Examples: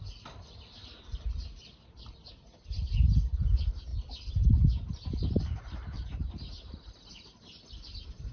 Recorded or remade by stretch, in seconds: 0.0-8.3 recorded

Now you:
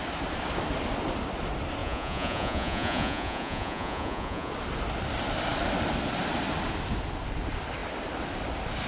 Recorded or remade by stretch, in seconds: 0.0-1.8 recorded; 1.8-4.5 remade; 4.5-8.9 recorded